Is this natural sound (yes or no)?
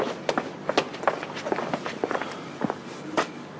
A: yes